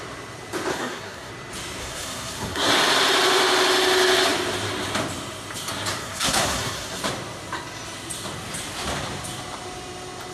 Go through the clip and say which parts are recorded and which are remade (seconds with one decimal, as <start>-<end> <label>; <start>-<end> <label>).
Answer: 0.0-0.7 recorded; 0.7-1.3 remade; 1.3-1.8 recorded; 1.8-2.7 remade; 2.7-6.0 recorded; 6.0-7.0 remade; 7.0-10.3 recorded